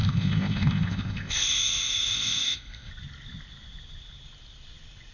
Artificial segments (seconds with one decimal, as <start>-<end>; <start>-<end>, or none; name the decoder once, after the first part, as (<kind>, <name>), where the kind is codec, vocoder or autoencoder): 0.0-2.9 (codec, ZipCodec)